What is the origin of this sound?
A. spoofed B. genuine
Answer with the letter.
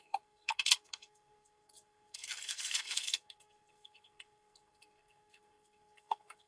A